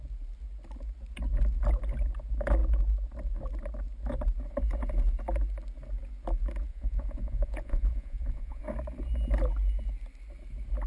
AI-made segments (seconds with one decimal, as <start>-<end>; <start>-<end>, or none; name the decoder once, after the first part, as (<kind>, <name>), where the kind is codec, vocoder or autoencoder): 6.7-8.6 (vocoder, Vocos)